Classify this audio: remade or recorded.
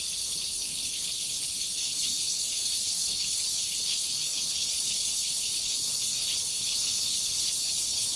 remade